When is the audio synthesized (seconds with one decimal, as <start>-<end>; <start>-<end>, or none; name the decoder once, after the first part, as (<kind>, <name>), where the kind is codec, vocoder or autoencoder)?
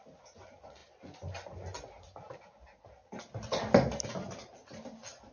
none